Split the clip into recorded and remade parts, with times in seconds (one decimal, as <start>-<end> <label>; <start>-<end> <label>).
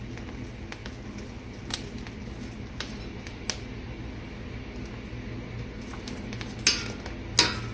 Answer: 0.0-7.7 recorded